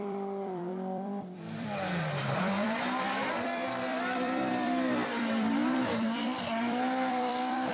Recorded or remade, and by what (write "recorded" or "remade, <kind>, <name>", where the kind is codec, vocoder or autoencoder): remade, vocoder, BigVGAN v2